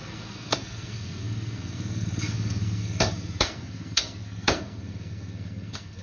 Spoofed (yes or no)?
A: yes